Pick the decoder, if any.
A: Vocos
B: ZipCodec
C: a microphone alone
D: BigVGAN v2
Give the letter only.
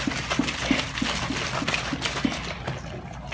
C